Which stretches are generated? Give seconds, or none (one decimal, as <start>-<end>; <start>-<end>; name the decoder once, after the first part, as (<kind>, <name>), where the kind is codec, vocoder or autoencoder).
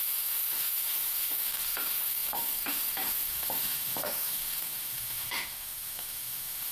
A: 0.0-6.7 (autoencoder, DAC-VAE)